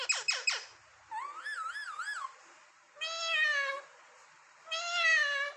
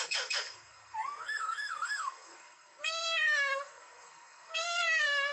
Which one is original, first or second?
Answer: first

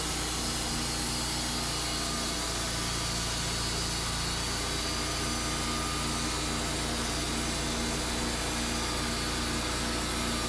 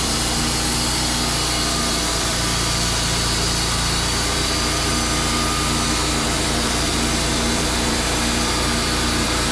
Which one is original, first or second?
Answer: first